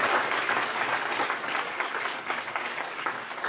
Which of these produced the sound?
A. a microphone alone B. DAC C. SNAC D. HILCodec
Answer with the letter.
B